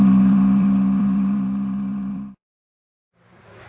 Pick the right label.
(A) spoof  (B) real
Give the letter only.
A